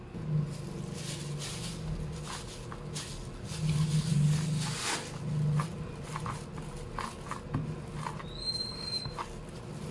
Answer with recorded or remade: recorded